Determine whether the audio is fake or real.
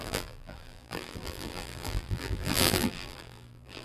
fake